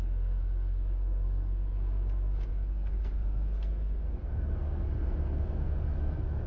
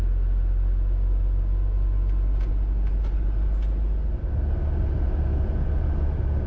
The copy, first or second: first